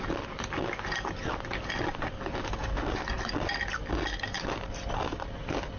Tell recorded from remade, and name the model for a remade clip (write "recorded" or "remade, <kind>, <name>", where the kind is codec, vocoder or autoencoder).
recorded